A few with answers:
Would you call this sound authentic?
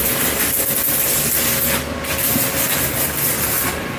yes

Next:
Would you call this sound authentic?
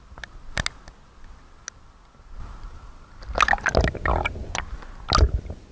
yes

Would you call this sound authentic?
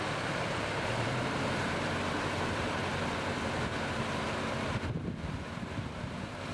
no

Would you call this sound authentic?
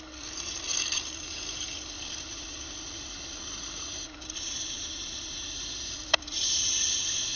no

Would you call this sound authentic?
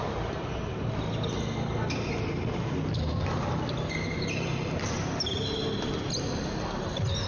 yes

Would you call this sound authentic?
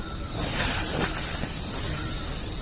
yes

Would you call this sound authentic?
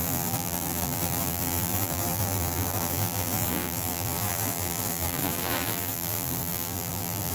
no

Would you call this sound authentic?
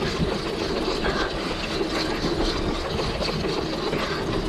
yes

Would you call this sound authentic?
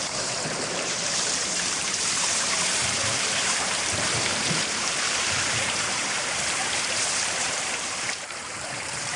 no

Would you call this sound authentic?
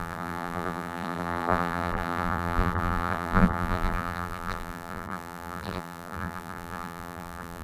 no